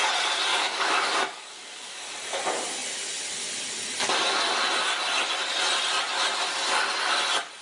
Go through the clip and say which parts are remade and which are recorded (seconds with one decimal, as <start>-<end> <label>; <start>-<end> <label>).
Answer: 0.0-0.5 recorded; 0.5-2.0 remade; 2.0-7.6 recorded